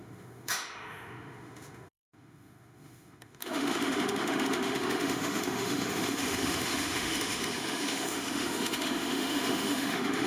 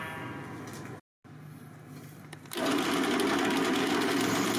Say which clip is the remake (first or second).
first